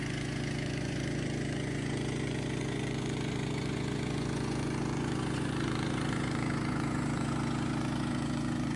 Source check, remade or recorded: remade